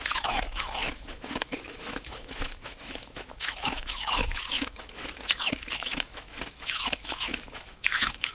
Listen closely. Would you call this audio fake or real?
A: fake